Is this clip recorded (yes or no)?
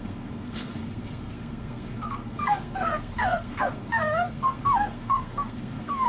no